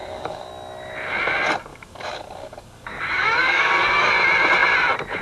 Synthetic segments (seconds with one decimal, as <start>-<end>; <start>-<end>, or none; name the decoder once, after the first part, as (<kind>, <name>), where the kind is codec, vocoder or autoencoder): 0.0-0.5 (codec, DAC); 1.7-4.1